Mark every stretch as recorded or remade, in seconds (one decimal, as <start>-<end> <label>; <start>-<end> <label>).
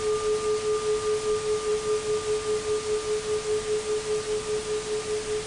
0.0-5.5 recorded